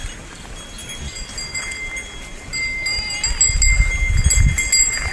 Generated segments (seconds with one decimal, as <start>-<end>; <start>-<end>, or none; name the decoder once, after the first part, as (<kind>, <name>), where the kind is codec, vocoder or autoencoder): none